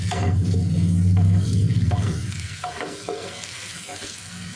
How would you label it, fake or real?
fake